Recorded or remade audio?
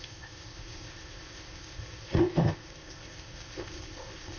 remade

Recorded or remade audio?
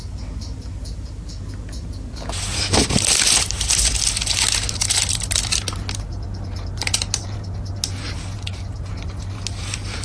recorded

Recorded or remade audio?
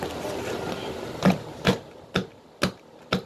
recorded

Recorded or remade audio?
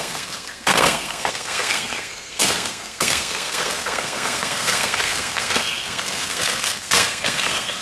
remade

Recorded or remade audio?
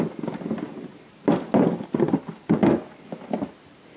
recorded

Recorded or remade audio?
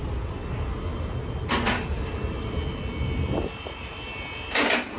recorded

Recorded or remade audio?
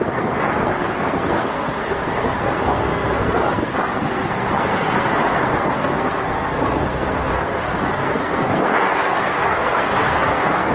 remade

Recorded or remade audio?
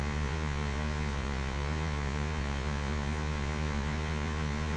remade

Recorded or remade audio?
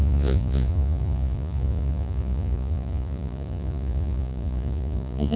remade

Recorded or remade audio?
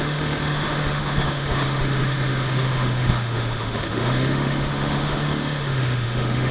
remade